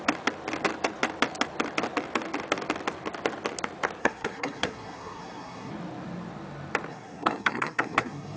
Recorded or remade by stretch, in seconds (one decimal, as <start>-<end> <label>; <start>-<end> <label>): 0.0-4.0 recorded; 4.0-5.7 remade; 5.7-6.9 recorded; 6.9-8.4 remade